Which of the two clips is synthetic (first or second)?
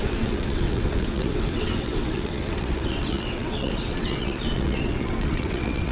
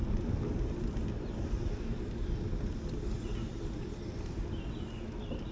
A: first